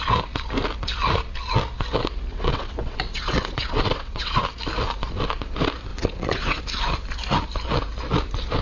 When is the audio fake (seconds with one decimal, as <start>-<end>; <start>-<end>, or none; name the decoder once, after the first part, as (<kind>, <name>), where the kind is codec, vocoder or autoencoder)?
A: 2.3-4.4 (vocoder, WaveNeXt); 5.9-6.6